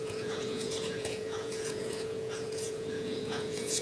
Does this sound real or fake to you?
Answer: fake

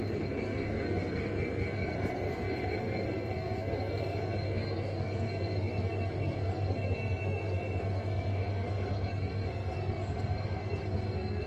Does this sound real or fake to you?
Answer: fake